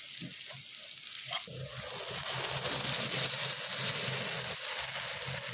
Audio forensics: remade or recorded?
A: recorded